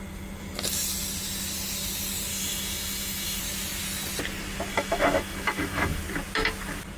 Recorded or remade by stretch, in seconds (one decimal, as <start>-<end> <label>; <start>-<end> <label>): 0.0-2.3 recorded; 2.3-3.4 remade; 3.4-4.7 recorded; 4.7-6.0 remade; 6.0-7.0 recorded